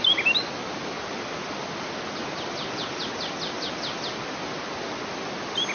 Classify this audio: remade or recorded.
recorded